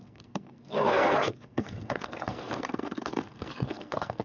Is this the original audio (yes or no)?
no